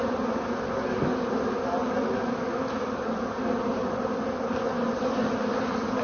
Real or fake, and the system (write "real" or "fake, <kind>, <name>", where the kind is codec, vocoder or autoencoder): real